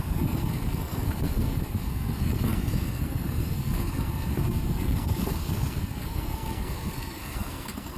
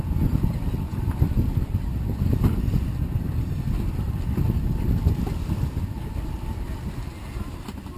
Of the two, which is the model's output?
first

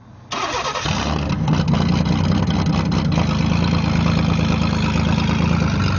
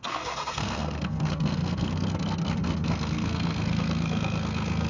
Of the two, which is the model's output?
second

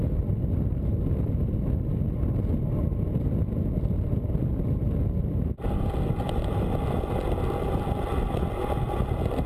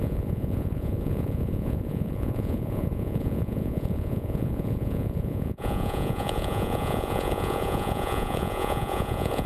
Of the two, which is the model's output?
second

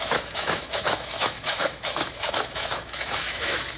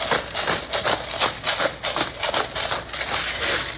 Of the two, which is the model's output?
first